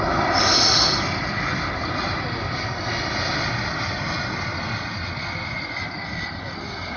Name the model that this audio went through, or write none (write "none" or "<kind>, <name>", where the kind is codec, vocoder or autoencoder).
none